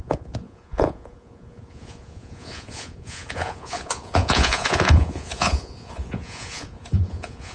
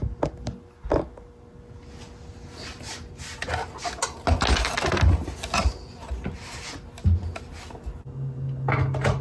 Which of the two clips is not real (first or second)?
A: first